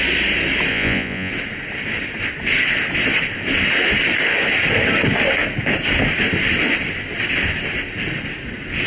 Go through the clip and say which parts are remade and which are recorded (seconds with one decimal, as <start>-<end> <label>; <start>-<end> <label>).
0.0-0.7 recorded; 0.7-1.3 remade; 1.3-8.9 recorded